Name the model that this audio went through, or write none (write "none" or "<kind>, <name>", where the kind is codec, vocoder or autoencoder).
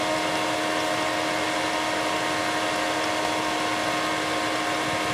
none